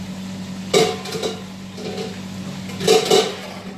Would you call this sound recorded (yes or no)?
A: yes